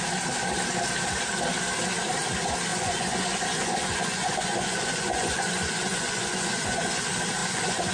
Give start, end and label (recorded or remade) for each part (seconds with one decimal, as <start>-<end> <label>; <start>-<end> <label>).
0.0-2.7 recorded; 2.7-7.0 remade; 7.0-7.4 recorded; 7.4-7.9 remade

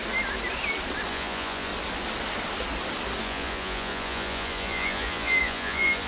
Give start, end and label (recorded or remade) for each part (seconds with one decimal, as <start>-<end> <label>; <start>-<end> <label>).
0.0-1.1 recorded; 1.1-1.7 remade; 1.7-3.2 recorded; 3.2-6.1 remade

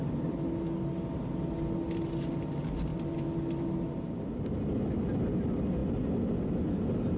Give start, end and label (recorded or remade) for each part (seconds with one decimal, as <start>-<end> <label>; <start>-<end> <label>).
0.0-7.2 recorded